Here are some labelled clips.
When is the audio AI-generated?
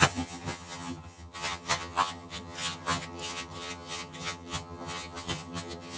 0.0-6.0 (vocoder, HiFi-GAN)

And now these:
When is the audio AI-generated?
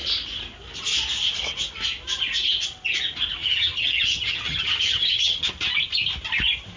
3.4-5.5 (vocoder, HiFi-GAN)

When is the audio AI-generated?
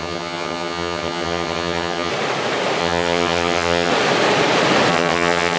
0.0-2.1 (vocoder, HiFi-GAN); 2.8-3.9; 4.9-5.6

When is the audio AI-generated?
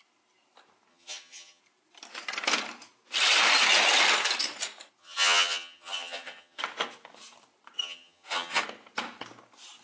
0.9-1.6 (vocoder, HiFi-GAN); 5.0-6.6; 7.8-8.6